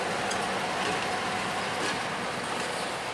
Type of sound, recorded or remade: recorded